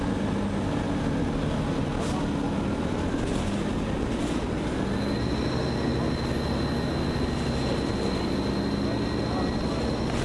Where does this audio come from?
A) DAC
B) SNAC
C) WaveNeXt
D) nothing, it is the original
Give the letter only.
D